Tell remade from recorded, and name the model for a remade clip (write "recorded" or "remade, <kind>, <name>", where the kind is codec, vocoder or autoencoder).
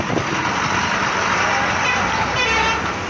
recorded